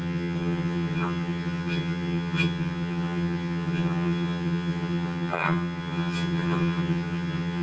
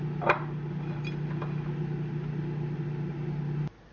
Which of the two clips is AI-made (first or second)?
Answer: first